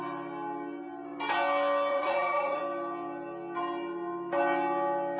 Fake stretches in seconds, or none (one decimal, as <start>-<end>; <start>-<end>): 1.9-2.6